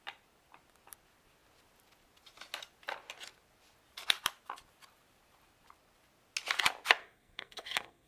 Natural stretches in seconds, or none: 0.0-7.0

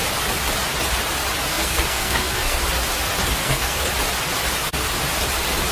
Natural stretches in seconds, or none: 0.0-1.5; 2.6-3.4; 3.9-5.7

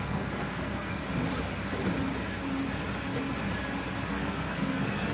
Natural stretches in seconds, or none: 1.0-4.1

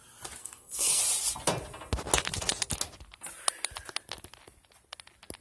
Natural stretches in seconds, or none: 0.0-0.4; 1.0-5.4

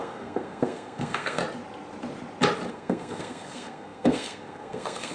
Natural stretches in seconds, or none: 1.4-2.7

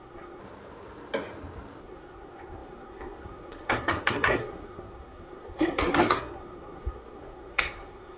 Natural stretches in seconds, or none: 0.4-1.8

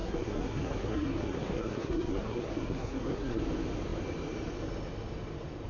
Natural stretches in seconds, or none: 3.4-5.7

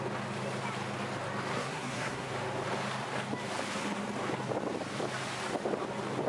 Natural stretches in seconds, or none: 0.0-1.5; 2.3-6.3